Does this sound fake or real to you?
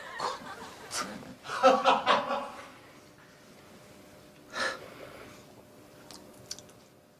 real